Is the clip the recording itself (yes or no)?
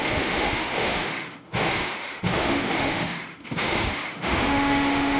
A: no